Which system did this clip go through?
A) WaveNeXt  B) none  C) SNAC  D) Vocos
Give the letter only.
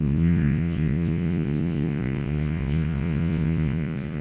D